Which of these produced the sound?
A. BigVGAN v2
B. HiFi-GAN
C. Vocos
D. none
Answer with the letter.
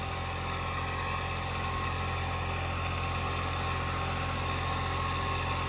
D